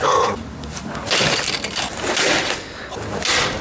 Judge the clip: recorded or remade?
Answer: recorded